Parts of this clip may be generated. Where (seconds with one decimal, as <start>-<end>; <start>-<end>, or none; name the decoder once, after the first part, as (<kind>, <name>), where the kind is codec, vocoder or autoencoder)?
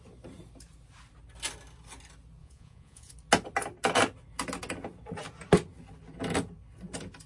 2.4-3.1 (vocoder, Vocos)